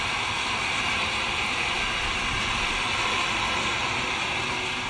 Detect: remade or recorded recorded